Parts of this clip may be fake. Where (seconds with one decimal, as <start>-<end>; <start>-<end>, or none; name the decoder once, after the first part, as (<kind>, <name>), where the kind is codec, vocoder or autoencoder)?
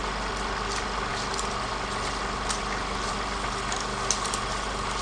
2.6-3.1 (vocoder, BigVGAN v2)